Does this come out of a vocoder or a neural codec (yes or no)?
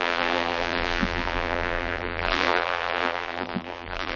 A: yes